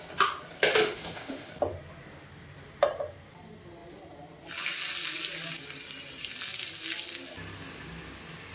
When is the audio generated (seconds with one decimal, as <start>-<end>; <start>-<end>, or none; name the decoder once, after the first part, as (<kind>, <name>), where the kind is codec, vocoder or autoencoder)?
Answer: 0.7-1.5 (autoencoder, DAC-VAE)

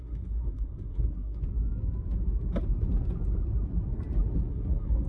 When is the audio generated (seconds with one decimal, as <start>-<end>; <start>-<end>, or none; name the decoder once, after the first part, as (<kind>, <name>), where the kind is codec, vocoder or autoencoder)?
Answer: 0.0-1.4 (codec, SNAC); 4.5-5.1

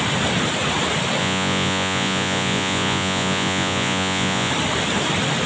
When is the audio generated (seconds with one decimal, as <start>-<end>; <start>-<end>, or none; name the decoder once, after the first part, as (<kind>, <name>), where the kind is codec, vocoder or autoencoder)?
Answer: 1.2-4.5 (vocoder, Vocos)

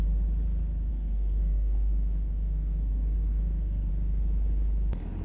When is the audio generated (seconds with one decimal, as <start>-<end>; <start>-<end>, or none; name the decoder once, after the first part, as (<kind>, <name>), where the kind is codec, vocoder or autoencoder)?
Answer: 0.9-3.9 (codec, SNAC)

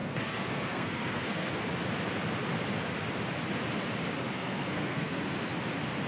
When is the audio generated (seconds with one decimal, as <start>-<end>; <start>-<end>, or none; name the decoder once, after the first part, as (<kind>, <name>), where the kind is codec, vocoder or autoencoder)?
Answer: 0.0-1.5 (codec, SNAC); 4.2-5.2

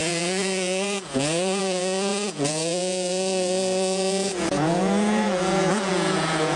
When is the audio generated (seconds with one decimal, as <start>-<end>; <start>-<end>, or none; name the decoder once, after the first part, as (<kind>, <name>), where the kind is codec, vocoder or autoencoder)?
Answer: 0.0-6.6 (vocoder, Vocos)

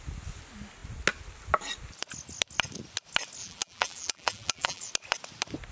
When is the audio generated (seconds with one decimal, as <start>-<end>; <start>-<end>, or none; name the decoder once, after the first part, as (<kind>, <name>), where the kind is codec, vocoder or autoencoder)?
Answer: 3.4-4.9 (vocoder, BigVGAN v2)